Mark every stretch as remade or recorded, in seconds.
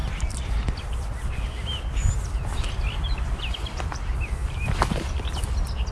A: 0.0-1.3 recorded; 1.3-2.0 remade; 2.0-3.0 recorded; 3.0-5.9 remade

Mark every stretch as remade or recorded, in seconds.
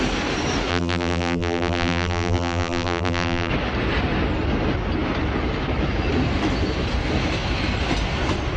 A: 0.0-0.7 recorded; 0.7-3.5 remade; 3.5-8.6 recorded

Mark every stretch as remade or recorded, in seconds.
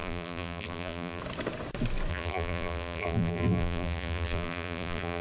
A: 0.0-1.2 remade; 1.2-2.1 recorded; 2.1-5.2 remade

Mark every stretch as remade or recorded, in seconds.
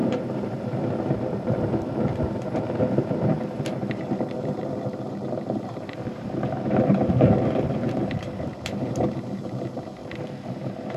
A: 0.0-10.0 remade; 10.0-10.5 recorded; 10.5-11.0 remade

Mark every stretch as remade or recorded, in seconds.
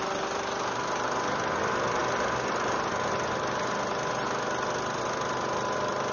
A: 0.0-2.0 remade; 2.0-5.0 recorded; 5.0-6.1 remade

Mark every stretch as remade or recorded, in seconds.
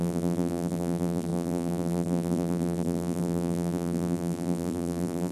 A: 0.0-5.3 remade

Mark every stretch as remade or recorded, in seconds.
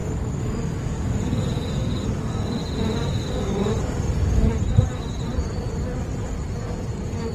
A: 0.0-2.6 recorded; 2.6-4.8 remade; 4.8-7.3 recorded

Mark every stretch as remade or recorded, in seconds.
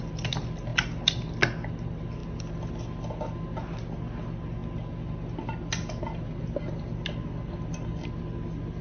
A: 0.0-8.8 recorded